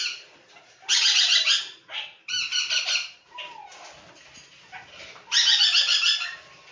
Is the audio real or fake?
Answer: real